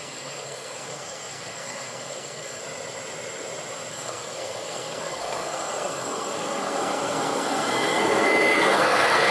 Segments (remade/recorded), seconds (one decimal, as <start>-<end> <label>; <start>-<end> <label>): 0.0-2.6 remade; 2.6-3.9 recorded; 3.9-9.3 remade